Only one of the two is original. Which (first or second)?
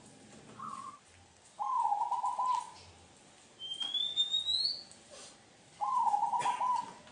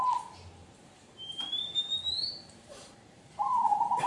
first